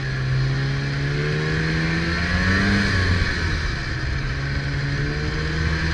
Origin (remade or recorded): recorded